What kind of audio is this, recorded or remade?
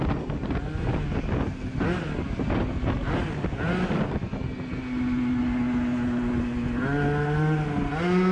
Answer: recorded